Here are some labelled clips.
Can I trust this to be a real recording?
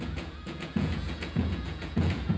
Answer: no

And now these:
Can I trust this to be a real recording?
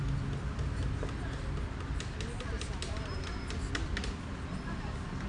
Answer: yes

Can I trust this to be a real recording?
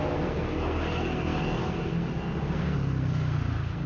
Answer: no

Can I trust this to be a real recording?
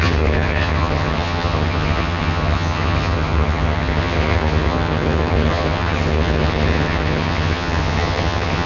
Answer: no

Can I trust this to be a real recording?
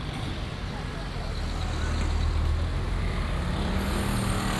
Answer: yes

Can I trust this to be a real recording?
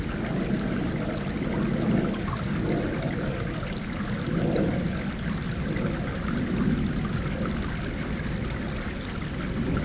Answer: yes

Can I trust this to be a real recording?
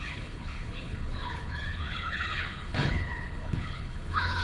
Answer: no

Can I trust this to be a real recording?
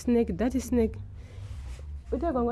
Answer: yes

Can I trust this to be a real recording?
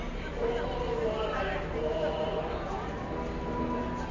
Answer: yes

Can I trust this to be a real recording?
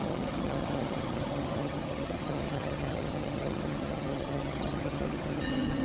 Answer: no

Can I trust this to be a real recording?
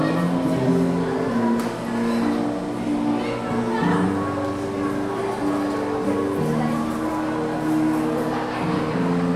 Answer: yes